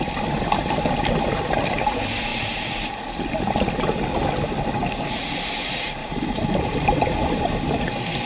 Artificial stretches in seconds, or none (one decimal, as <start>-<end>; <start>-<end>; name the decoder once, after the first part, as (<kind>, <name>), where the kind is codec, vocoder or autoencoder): 2.3-3.0 (vocoder, BigVGAN v2); 6.0-7.5